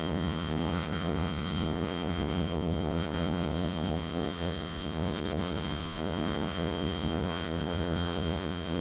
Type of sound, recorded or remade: remade